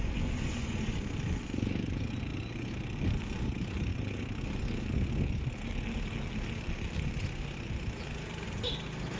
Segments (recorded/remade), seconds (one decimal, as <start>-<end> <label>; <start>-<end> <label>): 0.0-0.9 remade; 0.9-9.2 recorded